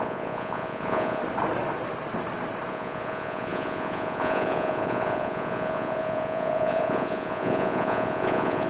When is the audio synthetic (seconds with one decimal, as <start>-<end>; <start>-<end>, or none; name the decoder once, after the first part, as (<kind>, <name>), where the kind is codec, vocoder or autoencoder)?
0.0-1.2 (vocoder, Vocos); 2.7-8.7